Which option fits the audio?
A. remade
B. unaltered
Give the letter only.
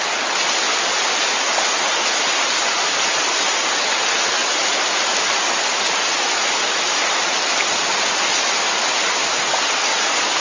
B